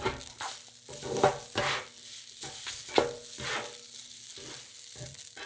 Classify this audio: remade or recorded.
recorded